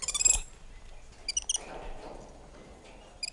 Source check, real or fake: real